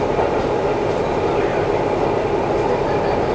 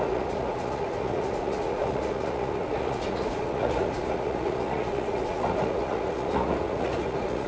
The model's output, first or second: second